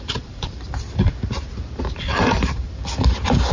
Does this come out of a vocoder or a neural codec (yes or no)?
yes